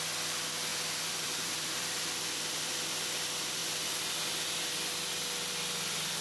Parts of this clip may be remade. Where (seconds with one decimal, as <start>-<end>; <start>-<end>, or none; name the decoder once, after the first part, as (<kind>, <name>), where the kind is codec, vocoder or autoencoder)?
0.7-2.9 (vocoder, BigVGAN v2)